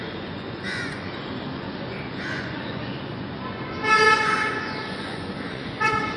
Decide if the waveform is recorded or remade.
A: remade